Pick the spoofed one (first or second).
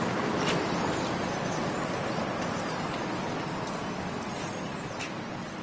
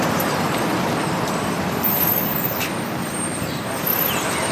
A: second